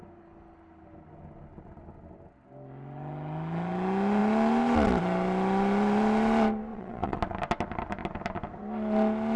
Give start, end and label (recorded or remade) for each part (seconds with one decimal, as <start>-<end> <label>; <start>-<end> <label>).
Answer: 0.0-6.7 recorded; 6.7-7.2 remade; 7.2-9.4 recorded

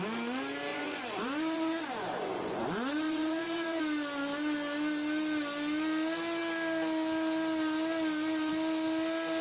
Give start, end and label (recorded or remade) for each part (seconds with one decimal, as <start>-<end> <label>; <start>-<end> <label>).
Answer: 0.0-0.7 recorded; 0.7-3.8 remade; 3.8-9.4 recorded

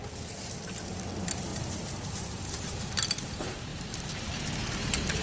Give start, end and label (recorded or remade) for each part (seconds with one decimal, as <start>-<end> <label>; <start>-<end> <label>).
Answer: 0.0-1.5 recorded; 1.5-2.8 remade; 2.8-5.2 recorded

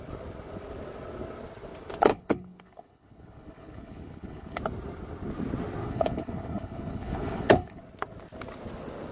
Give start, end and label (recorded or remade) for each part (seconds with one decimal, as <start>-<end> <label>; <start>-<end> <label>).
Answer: 0.0-2.1 recorded; 2.1-4.6 remade; 4.6-5.8 recorded; 5.8-7.8 remade; 7.8-9.1 recorded

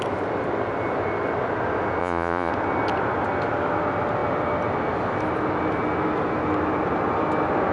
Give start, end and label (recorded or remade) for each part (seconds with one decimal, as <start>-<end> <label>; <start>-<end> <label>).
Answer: 0.0-2.0 recorded; 2.0-2.5 remade; 2.5-7.7 recorded

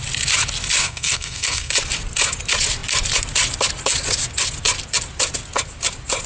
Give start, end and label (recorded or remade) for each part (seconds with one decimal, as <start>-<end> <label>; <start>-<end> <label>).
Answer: 0.0-0.8 recorded; 0.8-1.7 remade; 1.7-6.3 recorded

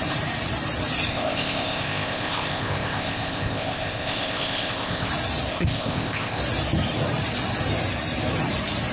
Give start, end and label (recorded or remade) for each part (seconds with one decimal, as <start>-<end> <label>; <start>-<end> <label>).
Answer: 0.0-1.1 recorded; 1.1-5.1 remade; 5.1-5.5 recorded; 5.5-6.4 remade; 6.4-8.9 recorded